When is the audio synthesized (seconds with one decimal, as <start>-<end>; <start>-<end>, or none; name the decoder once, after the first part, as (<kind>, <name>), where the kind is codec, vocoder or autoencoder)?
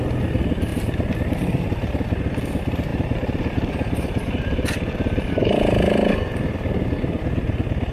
0.7-2.2 (vocoder, BigVGAN v2); 2.9-5.3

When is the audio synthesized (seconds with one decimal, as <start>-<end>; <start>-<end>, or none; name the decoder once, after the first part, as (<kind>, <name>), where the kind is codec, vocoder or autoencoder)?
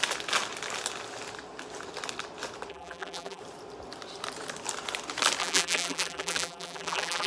2.7-3.4 (vocoder, BigVGAN v2); 5.4-7.3